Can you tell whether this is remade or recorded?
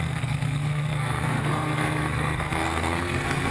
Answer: remade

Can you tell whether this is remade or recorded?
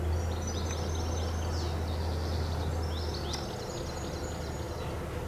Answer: recorded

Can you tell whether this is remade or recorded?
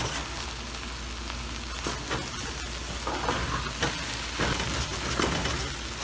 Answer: recorded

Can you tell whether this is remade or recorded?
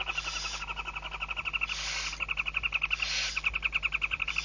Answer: recorded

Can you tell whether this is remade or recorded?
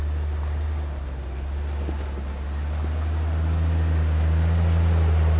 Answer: recorded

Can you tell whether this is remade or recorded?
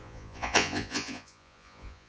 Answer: remade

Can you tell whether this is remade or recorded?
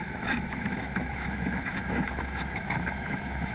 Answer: remade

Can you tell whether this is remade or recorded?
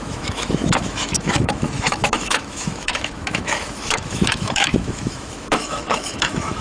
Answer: remade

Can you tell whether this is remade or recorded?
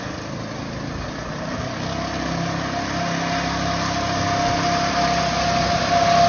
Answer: recorded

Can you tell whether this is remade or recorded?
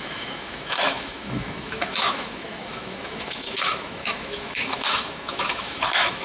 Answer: remade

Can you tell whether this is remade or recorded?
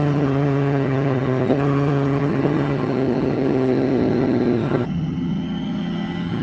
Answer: remade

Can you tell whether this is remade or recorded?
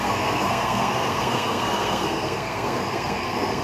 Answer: remade